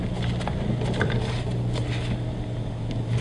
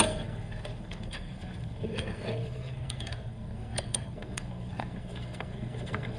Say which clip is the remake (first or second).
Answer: second